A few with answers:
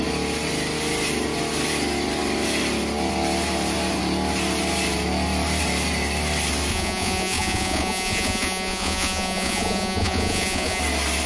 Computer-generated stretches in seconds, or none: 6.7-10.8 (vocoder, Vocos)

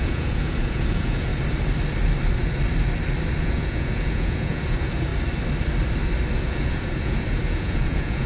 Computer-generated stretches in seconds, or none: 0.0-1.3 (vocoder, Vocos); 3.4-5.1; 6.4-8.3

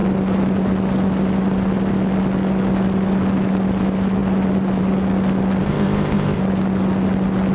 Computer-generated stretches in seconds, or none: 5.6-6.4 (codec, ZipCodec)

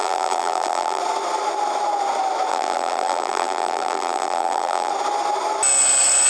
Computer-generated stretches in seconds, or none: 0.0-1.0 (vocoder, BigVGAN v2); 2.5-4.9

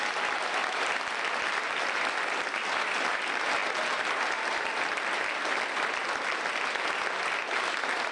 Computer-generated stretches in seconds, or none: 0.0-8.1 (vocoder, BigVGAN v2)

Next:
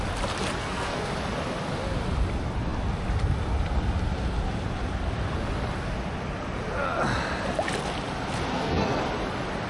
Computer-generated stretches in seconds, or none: 0.6-1.1 (codec, SNAC); 8.5-9.0

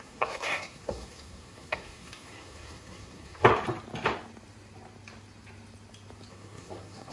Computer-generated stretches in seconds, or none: 0.0-3.5 (codec, SNAC); 6.3-7.1

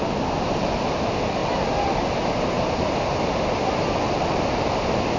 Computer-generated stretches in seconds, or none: none